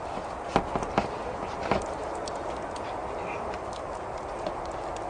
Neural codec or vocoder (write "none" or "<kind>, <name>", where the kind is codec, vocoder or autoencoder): none